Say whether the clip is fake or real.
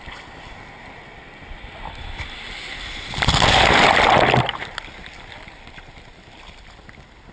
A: real